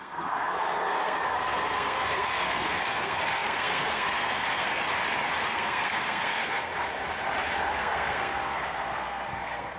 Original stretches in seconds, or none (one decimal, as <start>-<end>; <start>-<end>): 4.8-5.4; 6.7-7.7